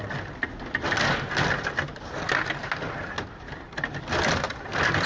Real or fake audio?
real